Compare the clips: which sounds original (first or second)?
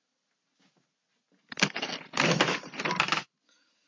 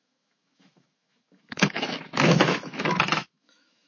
first